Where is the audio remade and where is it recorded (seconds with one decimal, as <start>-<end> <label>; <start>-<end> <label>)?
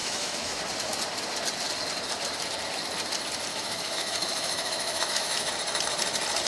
0.0-0.6 remade; 0.6-3.5 recorded; 3.5-5.5 remade; 5.5-6.5 recorded